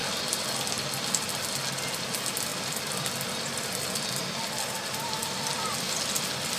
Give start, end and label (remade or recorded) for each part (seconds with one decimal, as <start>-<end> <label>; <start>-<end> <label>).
0.0-2.0 recorded; 2.0-5.2 remade; 5.2-6.6 recorded